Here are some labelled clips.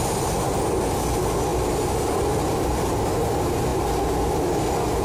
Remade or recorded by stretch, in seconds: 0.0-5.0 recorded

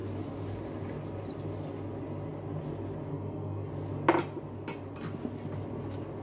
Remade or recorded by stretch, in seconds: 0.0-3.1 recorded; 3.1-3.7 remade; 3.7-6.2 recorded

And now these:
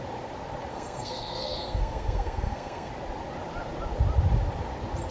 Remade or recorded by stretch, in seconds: 0.0-0.7 recorded; 0.7-2.9 remade; 2.9-5.1 recorded

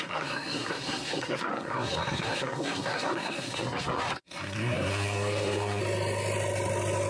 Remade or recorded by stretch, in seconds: 0.0-5.8 remade; 5.8-7.1 recorded